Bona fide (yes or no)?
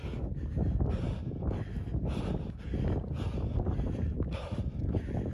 yes